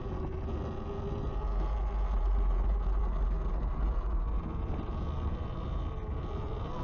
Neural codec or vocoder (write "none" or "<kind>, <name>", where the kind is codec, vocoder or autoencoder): none